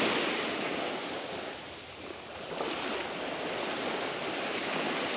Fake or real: real